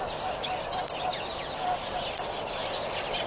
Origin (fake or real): real